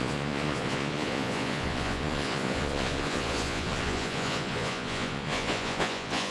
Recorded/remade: remade